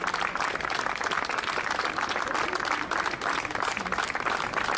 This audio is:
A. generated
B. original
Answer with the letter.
B